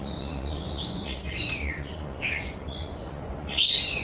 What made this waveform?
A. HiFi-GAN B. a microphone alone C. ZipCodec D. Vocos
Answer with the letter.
D